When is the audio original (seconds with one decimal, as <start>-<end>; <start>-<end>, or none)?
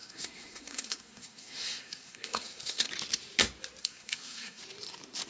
2.9-3.8; 4.6-5.3